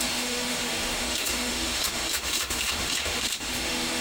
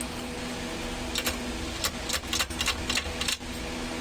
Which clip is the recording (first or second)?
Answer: second